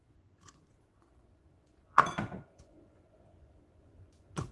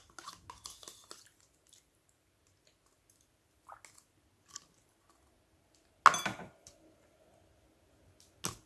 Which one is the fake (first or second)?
first